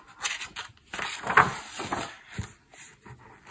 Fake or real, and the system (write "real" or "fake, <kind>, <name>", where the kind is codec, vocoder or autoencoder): real